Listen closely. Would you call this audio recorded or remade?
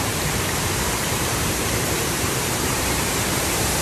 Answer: remade